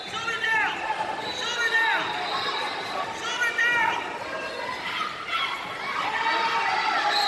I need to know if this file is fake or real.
real